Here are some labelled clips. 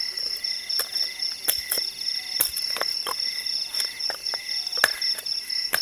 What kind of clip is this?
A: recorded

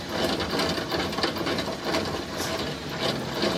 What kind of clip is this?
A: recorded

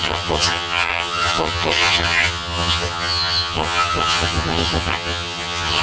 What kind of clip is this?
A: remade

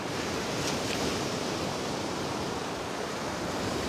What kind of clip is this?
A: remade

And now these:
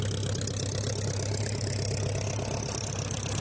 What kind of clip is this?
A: recorded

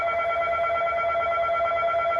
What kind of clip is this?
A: remade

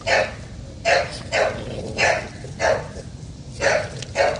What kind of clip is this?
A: recorded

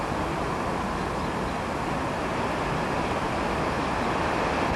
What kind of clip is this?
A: recorded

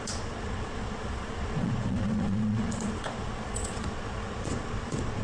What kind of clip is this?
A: remade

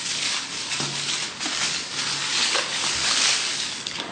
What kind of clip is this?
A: remade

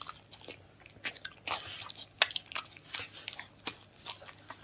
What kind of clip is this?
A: recorded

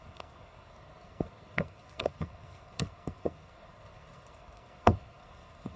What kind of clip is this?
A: remade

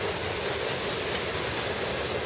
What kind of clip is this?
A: recorded